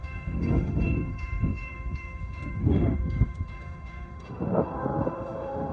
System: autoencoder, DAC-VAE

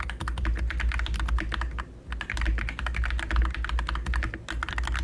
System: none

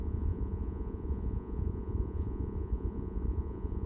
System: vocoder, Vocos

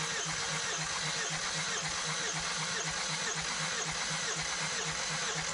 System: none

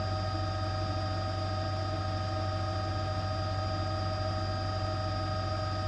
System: none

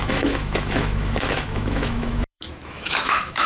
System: autoencoder, DAC-VAE